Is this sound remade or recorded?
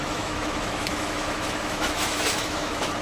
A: remade